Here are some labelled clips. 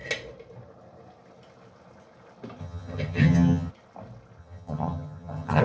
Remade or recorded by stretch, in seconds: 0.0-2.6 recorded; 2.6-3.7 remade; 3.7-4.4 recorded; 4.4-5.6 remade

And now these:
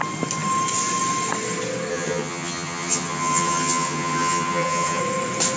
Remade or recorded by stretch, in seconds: 0.0-1.9 recorded; 1.9-5.0 remade; 5.0-5.6 recorded

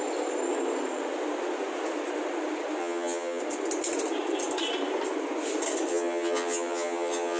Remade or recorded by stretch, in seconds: 0.0-2.8 recorded; 2.8-3.4 remade; 3.4-5.9 recorded; 5.9-7.4 remade

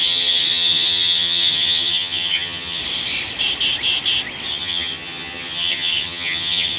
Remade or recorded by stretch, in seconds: 0.0-2.8 remade; 2.8-4.5 recorded; 4.5-6.8 remade

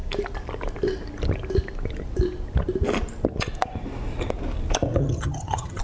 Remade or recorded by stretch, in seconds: 0.0-5.0 recorded; 5.0-5.8 remade

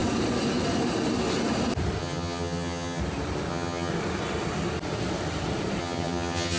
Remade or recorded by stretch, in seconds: 0.0-2.0 recorded; 2.0-3.0 remade; 3.0-3.5 recorded; 3.5-3.9 remade; 3.9-5.8 recorded; 5.8-6.6 remade